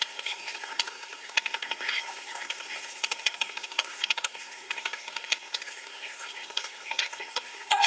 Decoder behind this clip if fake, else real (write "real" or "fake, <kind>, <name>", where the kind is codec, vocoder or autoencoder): fake, codec, SNAC